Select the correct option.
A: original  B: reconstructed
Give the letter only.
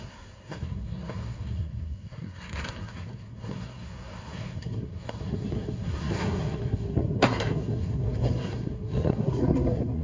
B